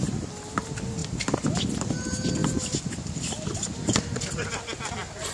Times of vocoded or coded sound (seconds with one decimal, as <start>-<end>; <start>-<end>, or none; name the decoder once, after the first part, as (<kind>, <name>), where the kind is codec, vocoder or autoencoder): none